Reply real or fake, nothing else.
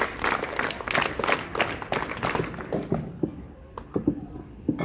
real